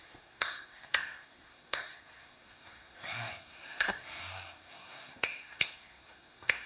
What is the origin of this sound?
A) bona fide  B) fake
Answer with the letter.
B